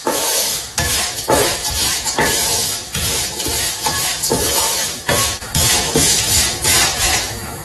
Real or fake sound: fake